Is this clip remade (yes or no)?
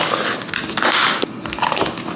no